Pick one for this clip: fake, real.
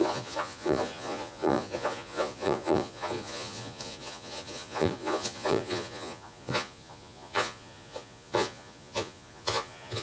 fake